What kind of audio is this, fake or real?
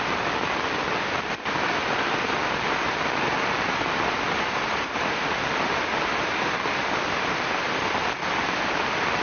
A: real